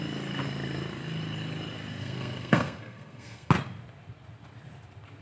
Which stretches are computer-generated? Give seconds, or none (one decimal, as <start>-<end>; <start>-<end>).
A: 2.0-3.5